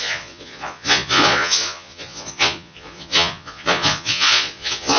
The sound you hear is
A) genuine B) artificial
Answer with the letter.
B